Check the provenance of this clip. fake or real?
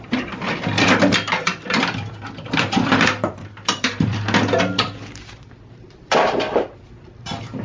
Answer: fake